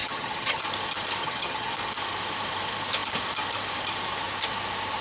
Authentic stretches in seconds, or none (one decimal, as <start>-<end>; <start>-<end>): 0.6-1.2; 1.7-5.0